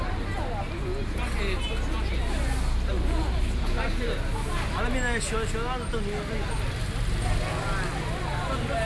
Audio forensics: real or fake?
real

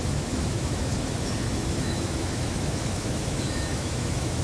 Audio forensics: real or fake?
fake